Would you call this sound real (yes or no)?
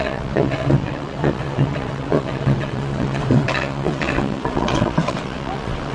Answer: no